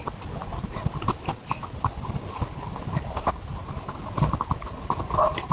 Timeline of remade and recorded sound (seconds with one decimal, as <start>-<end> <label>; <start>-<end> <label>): 0.0-5.5 recorded